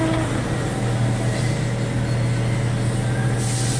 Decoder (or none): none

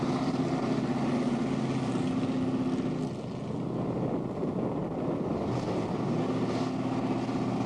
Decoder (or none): none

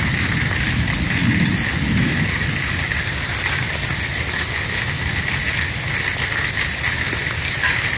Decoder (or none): none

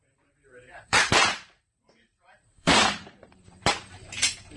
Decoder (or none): vocoder, BigVGAN v2